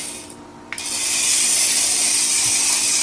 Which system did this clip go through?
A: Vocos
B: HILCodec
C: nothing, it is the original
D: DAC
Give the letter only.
C